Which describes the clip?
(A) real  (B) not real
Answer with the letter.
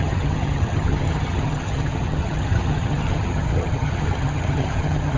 B